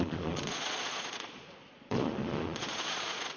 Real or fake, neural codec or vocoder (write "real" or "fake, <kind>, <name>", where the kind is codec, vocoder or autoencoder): fake, vocoder, Vocos